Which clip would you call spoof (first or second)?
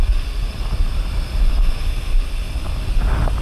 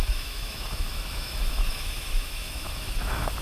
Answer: second